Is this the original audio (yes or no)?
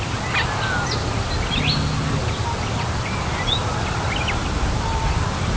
yes